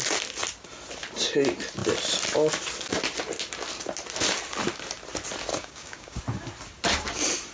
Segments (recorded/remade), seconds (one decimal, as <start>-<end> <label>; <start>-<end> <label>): 0.0-5.5 recorded; 5.5-6.2 remade; 6.2-7.5 recorded